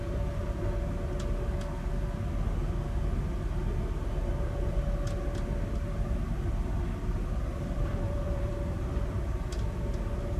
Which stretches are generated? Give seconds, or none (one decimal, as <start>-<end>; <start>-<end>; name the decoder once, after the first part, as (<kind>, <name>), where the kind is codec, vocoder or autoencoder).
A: 7.5-8.5 (vocoder, BigVGAN v2)

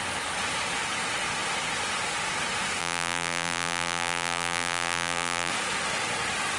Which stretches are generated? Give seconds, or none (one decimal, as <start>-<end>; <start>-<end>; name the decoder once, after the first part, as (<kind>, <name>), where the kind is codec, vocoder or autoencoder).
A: 2.8-5.5 (vocoder, BigVGAN v2)

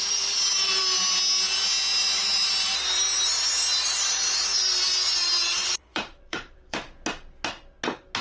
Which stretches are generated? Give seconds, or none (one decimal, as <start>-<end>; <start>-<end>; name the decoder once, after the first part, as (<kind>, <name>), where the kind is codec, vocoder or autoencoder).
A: 0.0-1.1 (vocoder, BigVGAN v2); 2.0-6.8